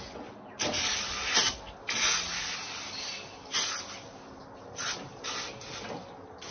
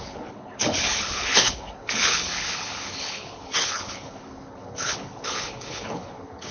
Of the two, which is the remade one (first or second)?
second